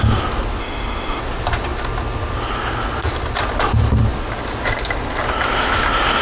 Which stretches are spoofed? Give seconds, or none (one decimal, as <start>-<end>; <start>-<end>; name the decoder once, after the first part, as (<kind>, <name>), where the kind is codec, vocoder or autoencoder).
0.6-1.2 (autoencoder, DAC-VAE)